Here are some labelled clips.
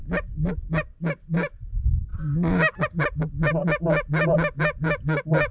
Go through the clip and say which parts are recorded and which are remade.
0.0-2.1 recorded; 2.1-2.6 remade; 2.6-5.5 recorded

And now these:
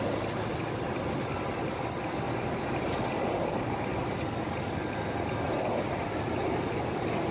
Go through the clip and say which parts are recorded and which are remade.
0.0-7.3 recorded

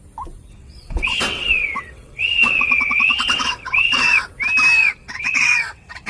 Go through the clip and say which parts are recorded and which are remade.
0.0-0.5 recorded; 0.5-4.2 remade; 4.2-4.8 recorded; 4.8-6.1 remade